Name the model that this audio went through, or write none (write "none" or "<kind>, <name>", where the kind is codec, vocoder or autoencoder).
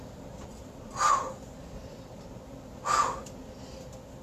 none